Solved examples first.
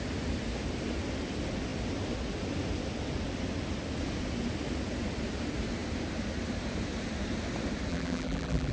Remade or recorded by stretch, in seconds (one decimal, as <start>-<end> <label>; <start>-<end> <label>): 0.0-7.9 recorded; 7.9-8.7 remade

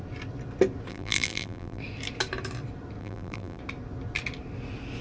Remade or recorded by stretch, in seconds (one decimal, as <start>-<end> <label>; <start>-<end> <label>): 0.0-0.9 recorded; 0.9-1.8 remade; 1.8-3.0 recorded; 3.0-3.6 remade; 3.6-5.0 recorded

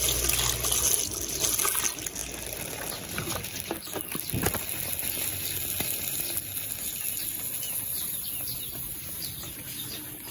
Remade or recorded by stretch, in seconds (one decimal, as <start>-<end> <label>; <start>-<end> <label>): 0.0-10.3 recorded

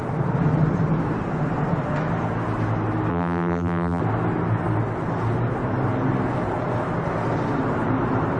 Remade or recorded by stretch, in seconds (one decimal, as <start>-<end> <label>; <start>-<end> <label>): 0.0-3.1 recorded; 3.1-4.0 remade; 4.0-8.4 recorded